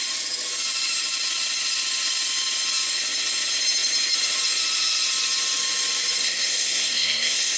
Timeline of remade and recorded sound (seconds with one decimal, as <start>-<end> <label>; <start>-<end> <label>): 0.0-6.2 recorded; 6.2-7.6 remade